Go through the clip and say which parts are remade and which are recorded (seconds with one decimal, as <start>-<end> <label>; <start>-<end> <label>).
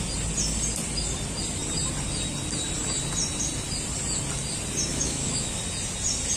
0.0-4.9 recorded; 4.9-5.6 remade; 5.6-6.4 recorded